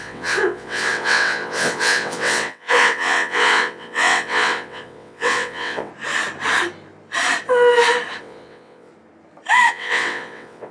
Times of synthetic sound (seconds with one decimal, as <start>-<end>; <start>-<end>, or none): 0.0-5.9; 8.2-8.9; 9.7-10.7